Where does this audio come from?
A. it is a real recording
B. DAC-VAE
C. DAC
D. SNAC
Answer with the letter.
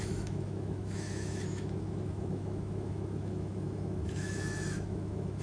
B